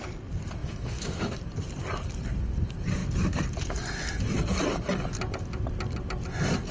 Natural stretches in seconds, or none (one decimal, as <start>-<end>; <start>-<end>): 0.0-0.6; 1.4-6.7